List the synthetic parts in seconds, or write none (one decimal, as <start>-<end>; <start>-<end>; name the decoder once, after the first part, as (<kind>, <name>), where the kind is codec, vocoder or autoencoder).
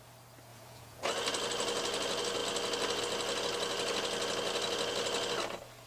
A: 0.5-1.1 (vocoder, Vocos)